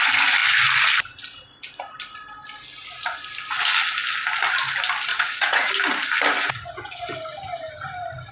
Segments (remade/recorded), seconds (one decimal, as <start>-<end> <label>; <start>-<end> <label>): 0.0-5.1 recorded; 5.1-5.7 remade; 5.7-6.4 recorded; 6.4-7.1 remade; 7.1-8.3 recorded